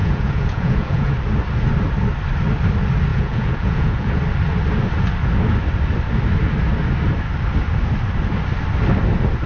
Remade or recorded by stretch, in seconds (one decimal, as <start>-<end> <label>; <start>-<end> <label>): 0.0-1.1 remade; 1.1-3.1 recorded; 3.1-4.2 remade; 4.2-9.5 recorded

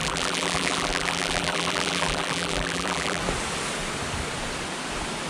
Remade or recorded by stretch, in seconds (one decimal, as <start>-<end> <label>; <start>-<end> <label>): 0.0-3.2 remade; 3.2-5.3 recorded

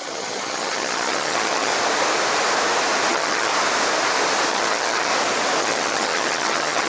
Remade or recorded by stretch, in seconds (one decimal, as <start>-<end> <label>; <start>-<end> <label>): 0.0-1.7 remade; 1.7-3.1 recorded; 3.1-3.5 remade; 3.5-4.5 recorded; 4.5-5.1 remade; 5.1-5.6 recorded; 5.6-6.9 remade

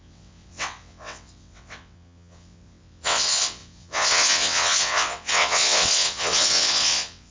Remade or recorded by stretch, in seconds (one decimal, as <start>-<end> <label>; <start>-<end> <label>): 0.0-7.3 remade

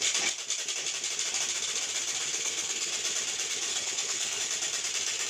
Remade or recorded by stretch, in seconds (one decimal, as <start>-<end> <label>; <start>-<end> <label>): 0.0-2.3 recorded; 2.3-2.9 remade; 2.9-3.7 recorded; 3.7-4.4 remade; 4.4-5.3 recorded

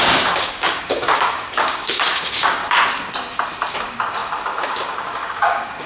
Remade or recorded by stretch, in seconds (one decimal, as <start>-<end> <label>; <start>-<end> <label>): 0.0-2.6 remade; 2.6-3.7 recorded; 3.7-5.9 remade